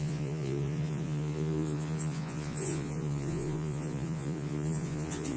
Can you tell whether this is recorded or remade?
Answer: remade